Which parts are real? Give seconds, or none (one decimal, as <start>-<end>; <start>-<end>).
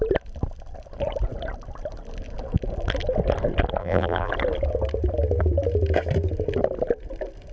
0.0-3.8; 4.3-7.5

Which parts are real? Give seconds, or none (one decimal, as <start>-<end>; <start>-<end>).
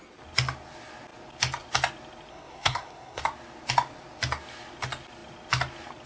0.0-2.3; 3.2-6.1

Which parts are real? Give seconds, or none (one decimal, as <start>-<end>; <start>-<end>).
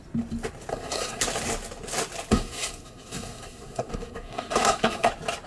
0.0-0.7; 1.2-2.3; 5.1-5.5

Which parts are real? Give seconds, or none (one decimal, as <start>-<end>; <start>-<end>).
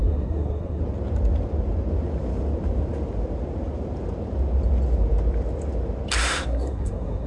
0.8-6.2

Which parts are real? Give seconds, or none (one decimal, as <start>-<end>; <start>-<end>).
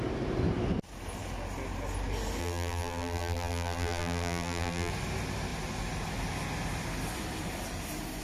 0.0-2.4; 4.9-8.2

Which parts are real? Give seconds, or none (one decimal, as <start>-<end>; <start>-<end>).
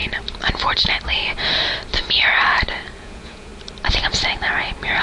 0.0-3.0; 3.5-5.0